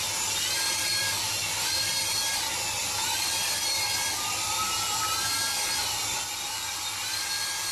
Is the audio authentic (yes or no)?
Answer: no